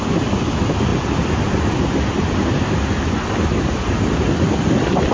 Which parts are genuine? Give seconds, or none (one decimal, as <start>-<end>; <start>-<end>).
0.0-5.1